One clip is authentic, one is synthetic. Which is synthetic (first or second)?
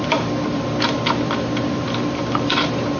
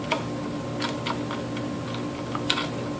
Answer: first